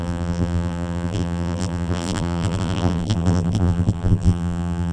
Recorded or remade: remade